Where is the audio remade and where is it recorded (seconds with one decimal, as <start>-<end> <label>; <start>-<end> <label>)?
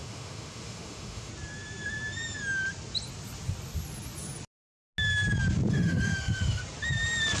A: 0.0-1.3 remade; 1.3-5.7 recorded; 5.7-6.6 remade; 6.6-7.4 recorded